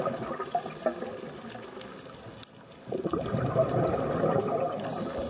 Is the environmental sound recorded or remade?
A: recorded